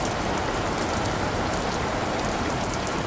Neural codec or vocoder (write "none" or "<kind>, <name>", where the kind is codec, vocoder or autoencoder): none